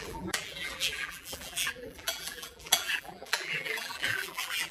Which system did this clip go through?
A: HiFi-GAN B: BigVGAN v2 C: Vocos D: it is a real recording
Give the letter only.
B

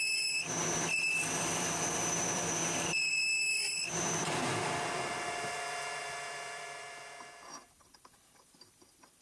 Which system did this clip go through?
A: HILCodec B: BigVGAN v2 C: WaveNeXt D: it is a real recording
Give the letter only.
B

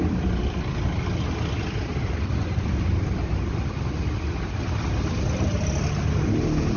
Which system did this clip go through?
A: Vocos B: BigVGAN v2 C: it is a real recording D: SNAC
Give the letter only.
C